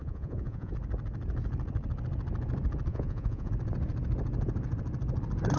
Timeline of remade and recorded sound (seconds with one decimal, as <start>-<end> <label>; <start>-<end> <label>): 0.0-0.7 remade; 0.7-2.9 recorded; 2.9-3.5 remade; 3.5-5.6 recorded